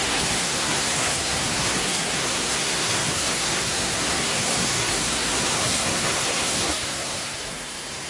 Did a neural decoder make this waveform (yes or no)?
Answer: yes